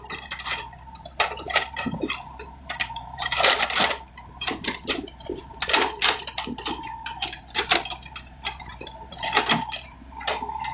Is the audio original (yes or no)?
no